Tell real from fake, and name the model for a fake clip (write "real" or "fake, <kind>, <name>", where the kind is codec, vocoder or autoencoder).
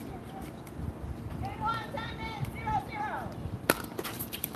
fake, vocoder, BigVGAN v2